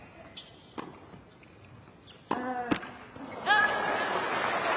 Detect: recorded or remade recorded